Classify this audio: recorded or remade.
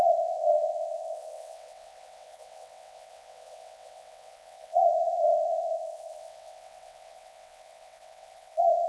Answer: remade